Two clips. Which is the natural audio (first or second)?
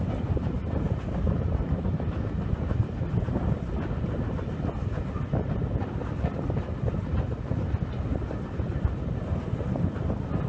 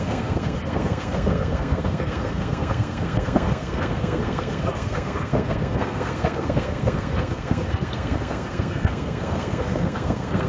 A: first